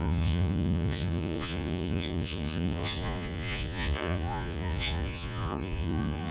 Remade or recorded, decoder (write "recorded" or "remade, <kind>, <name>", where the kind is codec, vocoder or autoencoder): remade, vocoder, Vocos